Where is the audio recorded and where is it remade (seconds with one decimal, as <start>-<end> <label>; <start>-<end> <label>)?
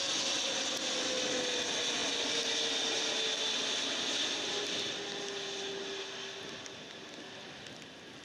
0.0-8.2 recorded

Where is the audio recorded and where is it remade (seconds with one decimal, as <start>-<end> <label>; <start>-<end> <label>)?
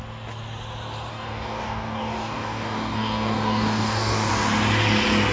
0.0-1.1 recorded; 1.1-4.3 remade; 4.3-5.3 recorded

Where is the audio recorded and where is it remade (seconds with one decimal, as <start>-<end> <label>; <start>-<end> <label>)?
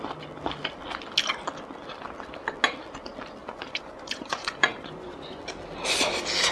0.0-3.4 recorded; 3.4-5.4 remade; 5.4-6.5 recorded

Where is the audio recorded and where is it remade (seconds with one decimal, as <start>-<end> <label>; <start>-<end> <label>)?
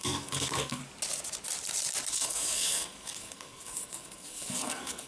0.0-0.8 remade; 0.8-2.1 recorded; 2.1-5.1 remade